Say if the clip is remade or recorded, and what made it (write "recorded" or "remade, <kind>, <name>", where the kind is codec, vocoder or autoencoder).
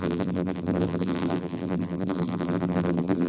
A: remade, vocoder, BigVGAN v2